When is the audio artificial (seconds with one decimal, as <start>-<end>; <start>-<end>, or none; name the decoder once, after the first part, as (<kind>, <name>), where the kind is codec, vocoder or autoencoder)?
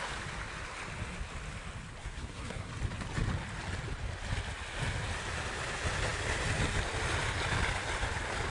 2.0-2.7 (codec, SNAC)